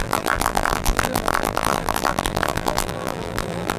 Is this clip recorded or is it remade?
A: remade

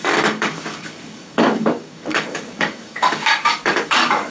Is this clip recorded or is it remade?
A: remade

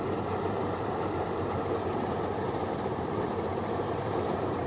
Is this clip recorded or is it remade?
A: remade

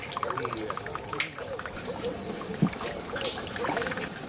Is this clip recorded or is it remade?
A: recorded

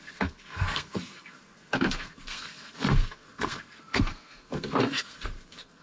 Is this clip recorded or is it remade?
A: remade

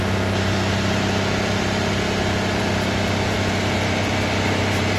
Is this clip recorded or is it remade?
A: recorded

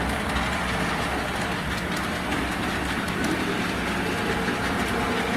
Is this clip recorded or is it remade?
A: recorded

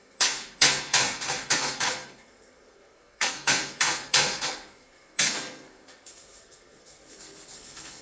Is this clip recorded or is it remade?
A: remade